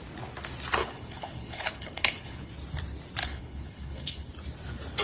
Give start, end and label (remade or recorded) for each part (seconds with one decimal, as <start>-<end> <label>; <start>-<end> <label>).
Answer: 0.0-0.8 recorded; 0.8-2.5 remade; 2.5-3.2 recorded; 3.2-4.3 remade; 4.3-5.0 recorded